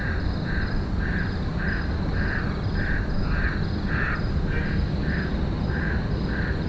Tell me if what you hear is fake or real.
real